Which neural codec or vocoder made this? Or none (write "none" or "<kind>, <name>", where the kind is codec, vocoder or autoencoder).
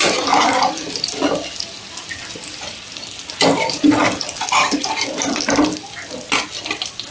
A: none